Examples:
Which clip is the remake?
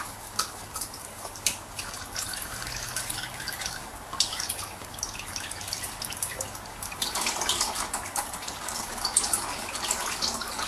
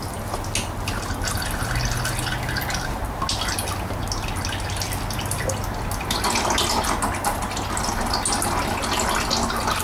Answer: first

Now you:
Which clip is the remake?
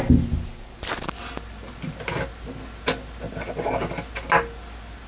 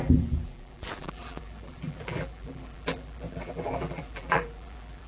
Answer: second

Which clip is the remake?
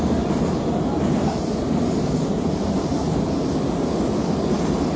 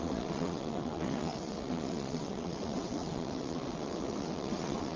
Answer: second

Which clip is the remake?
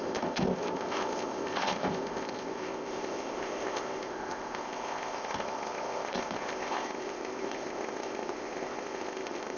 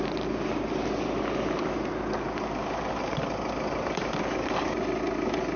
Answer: first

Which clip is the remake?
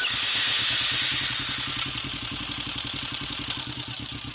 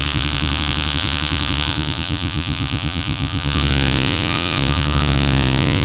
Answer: second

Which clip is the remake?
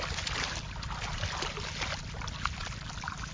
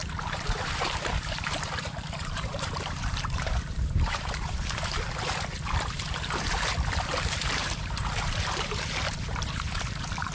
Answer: second